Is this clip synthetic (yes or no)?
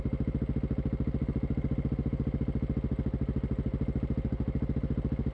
no